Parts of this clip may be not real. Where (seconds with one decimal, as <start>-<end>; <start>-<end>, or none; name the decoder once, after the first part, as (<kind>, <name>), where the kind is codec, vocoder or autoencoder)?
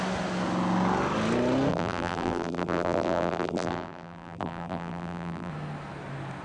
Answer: 1.7-5.5 (vocoder, BigVGAN v2)